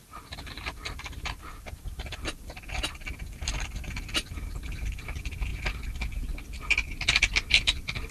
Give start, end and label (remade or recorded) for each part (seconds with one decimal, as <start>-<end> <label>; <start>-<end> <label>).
0.0-5.5 remade; 5.5-7.5 recorded; 7.5-8.1 remade